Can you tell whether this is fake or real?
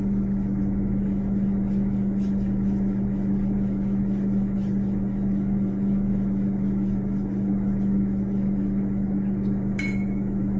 fake